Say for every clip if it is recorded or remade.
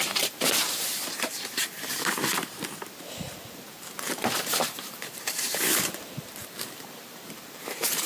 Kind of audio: remade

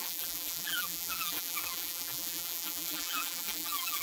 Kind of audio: remade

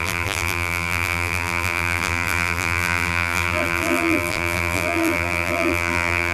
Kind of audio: remade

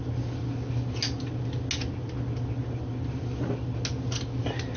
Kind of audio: recorded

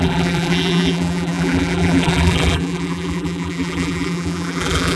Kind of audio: remade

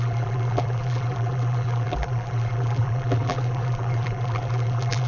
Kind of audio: remade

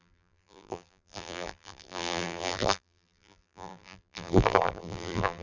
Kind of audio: remade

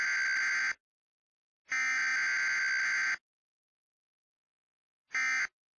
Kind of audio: recorded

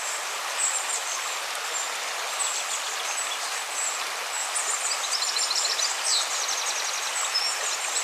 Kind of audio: recorded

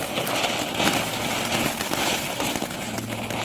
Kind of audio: recorded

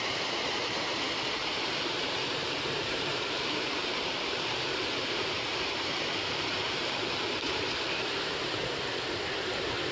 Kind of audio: remade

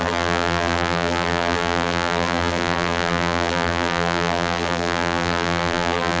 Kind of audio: remade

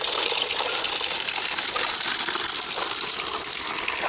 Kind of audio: recorded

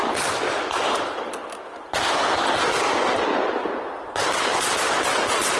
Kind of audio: recorded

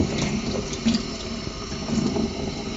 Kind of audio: recorded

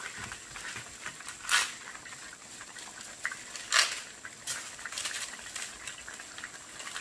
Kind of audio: recorded